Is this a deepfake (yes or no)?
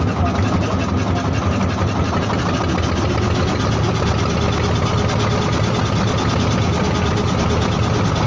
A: no